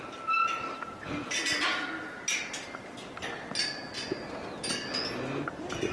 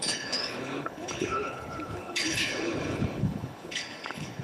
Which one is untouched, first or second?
first